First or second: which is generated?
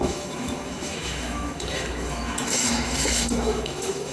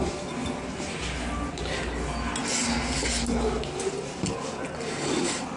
first